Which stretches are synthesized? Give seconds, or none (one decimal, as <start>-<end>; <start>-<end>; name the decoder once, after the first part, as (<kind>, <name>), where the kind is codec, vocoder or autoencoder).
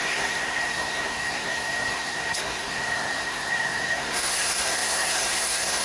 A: 0.0-5.8 (codec, SNAC)